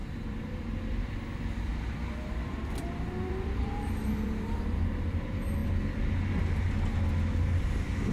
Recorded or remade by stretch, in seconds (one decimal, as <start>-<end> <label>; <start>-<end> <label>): 0.0-5.6 remade; 5.6-8.1 recorded